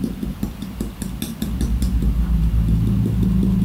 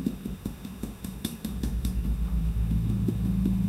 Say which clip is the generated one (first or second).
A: second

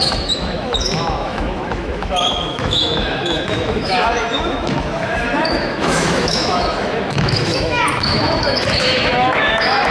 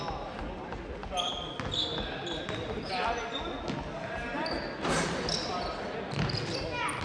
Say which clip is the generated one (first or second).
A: first